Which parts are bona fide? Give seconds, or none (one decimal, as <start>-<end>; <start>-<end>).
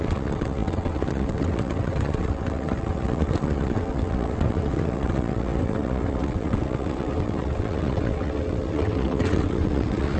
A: none